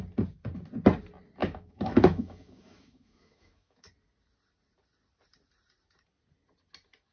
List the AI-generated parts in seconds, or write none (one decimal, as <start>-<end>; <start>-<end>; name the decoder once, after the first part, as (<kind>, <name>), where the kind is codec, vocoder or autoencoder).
1.4-3.9 (autoencoder, DAC-VAE)